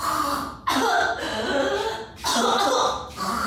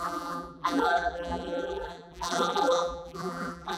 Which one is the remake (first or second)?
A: second